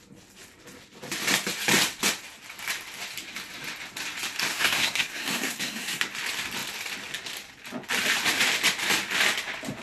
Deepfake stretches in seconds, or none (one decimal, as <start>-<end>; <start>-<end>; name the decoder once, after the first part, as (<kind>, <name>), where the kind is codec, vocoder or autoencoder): 4.5-6.0 (codec, SNAC)